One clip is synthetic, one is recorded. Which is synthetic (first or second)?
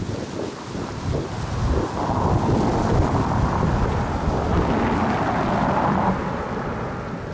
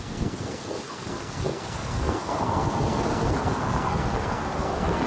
second